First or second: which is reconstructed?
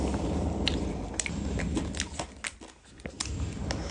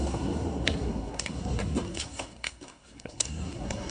second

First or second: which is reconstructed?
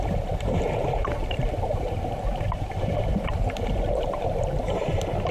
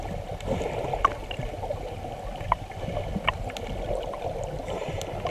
first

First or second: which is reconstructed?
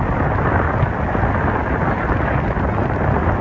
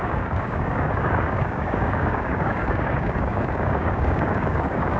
second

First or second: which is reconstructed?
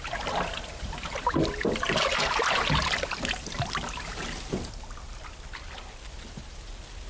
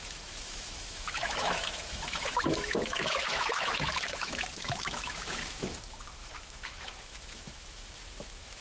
second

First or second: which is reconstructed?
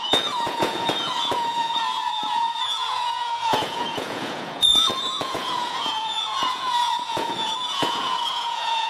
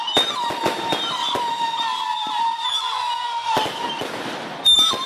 first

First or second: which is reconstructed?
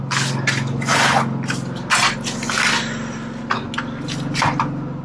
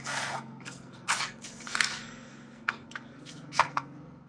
second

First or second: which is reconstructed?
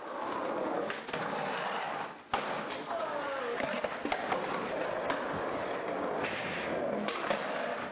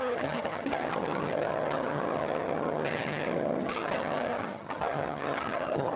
second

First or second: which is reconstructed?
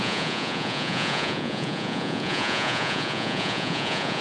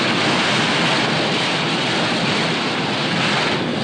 first